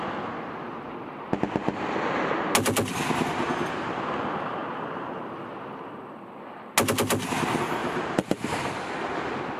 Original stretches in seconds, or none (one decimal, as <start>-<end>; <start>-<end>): 0.0-7.8; 8.7-9.6